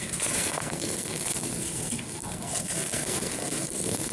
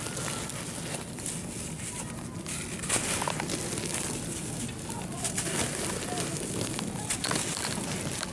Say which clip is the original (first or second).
second